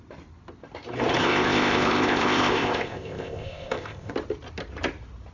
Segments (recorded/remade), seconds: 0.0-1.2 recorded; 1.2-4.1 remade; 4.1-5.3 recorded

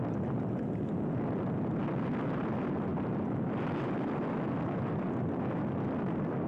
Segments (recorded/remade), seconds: 0.0-6.5 recorded